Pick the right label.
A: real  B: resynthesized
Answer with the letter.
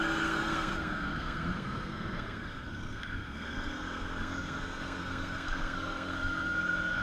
B